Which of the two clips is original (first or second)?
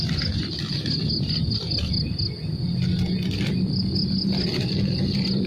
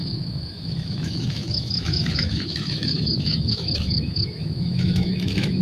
first